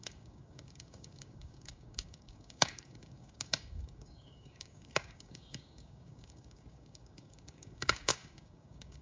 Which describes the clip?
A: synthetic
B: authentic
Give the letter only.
A